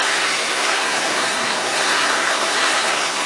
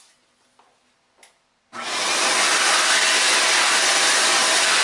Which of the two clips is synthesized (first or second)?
first